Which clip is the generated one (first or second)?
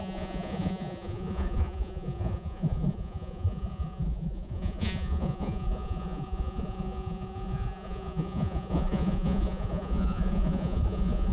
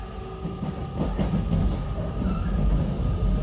first